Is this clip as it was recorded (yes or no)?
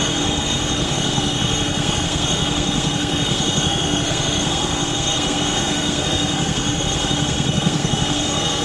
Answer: no